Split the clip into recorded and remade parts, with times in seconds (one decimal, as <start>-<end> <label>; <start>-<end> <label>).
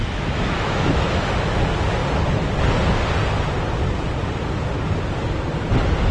0.0-2.0 remade; 2.0-6.1 recorded